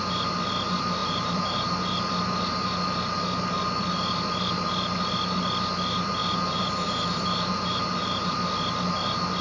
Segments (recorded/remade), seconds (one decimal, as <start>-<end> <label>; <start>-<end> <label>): 0.0-1.0 recorded; 1.0-2.1 remade; 2.1-6.2 recorded; 6.2-8.3 remade; 8.3-9.4 recorded